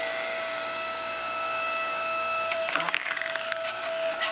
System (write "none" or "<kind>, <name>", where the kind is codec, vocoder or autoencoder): codec, DAC